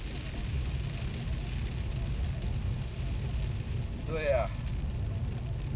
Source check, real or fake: real